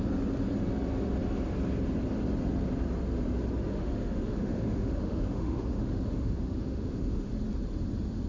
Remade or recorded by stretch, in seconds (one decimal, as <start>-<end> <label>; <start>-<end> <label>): 0.0-3.7 recorded; 3.7-7.3 remade; 7.3-8.3 recorded